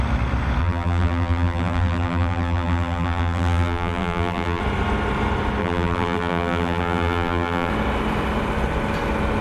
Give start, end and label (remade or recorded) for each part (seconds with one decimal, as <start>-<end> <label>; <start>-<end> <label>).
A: 0.0-0.6 recorded; 0.6-4.6 remade; 4.6-5.6 recorded; 5.6-7.7 remade; 7.7-9.4 recorded